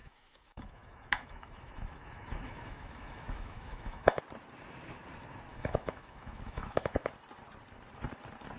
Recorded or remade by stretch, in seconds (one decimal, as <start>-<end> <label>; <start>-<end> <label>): 0.0-4.2 remade; 4.2-5.5 recorded; 5.5-7.1 remade; 7.1-8.6 recorded